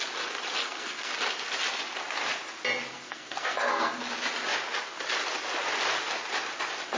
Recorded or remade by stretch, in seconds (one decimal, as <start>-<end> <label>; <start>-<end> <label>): 0.0-0.6 recorded; 0.6-1.1 remade; 1.1-2.9 recorded; 2.9-3.9 remade; 3.9-7.0 recorded